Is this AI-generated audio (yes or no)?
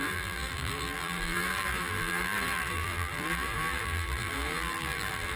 yes